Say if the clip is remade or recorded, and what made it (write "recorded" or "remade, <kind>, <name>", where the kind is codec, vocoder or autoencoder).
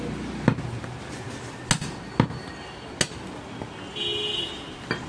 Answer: recorded